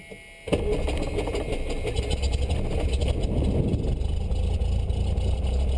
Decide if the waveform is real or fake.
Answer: real